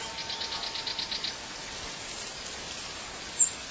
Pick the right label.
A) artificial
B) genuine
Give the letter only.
B